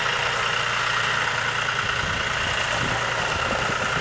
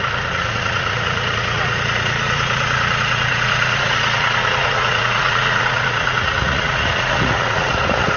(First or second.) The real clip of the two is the first